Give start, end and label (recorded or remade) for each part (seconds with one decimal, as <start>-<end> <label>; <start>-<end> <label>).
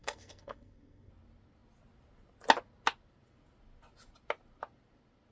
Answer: 0.0-1.1 remade; 1.1-5.3 recorded